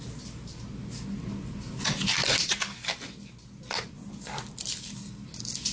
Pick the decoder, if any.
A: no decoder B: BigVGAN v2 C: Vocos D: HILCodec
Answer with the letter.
A